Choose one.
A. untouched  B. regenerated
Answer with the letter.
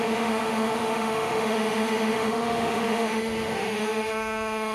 B